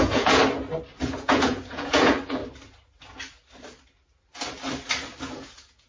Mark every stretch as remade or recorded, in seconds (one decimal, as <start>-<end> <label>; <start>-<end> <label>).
0.0-0.4 remade; 0.4-1.0 recorded; 1.0-2.4 remade; 2.4-5.2 recorded; 5.2-5.9 remade